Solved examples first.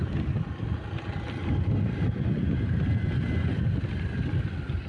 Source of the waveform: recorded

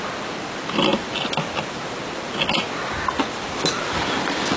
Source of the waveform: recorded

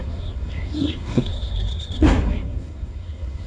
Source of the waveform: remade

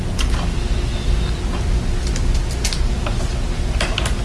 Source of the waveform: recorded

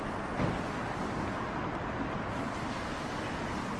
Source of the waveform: recorded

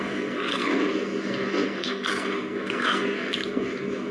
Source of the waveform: remade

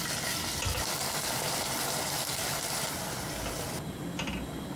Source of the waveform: recorded